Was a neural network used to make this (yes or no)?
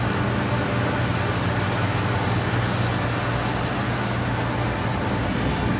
no